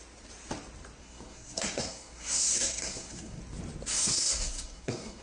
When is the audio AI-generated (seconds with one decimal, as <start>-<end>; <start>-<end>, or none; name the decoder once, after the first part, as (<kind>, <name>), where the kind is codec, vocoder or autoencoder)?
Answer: 1.0-3.4 (codec, SNAC); 3.9-5.2